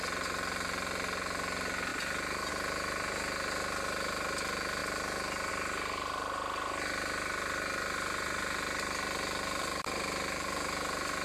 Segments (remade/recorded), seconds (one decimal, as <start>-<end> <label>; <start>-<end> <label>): 0.0-1.9 recorded; 1.9-2.5 remade; 2.5-11.2 recorded